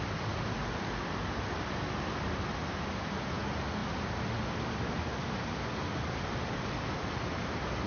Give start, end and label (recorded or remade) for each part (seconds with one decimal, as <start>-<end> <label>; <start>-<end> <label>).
0.0-7.9 recorded